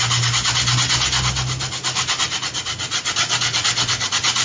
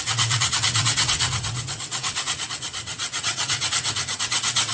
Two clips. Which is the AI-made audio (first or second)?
second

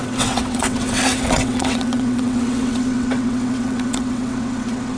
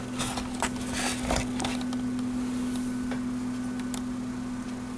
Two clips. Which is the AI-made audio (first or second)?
first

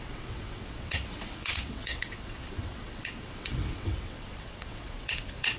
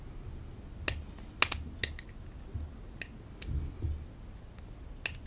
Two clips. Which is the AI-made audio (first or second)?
first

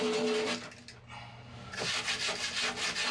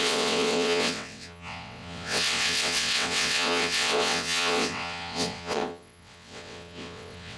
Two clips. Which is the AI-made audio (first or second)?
second